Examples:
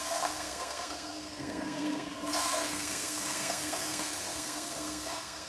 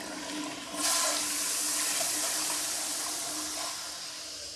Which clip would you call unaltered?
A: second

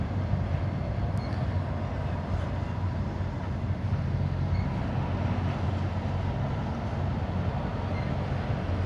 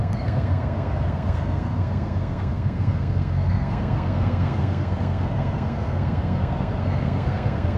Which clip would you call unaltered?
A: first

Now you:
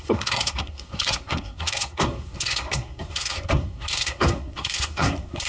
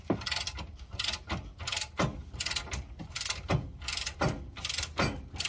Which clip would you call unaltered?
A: second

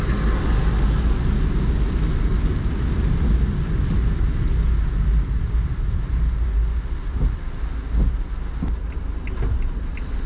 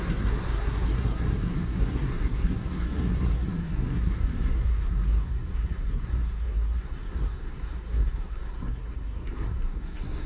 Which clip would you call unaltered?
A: first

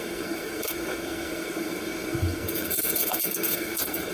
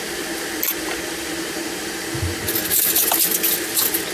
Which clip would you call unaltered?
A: second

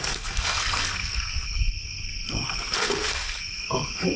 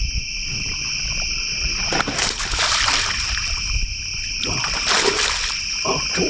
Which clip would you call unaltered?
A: second